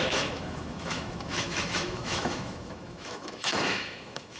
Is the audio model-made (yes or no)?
yes